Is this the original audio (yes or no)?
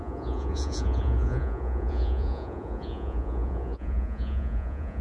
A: no